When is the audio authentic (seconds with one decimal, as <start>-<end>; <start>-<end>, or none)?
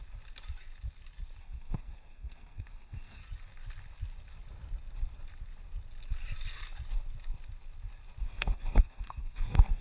0.0-1.4; 3.2-8.2